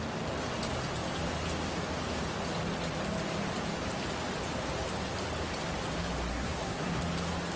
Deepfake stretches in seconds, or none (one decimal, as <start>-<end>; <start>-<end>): 6.3-7.0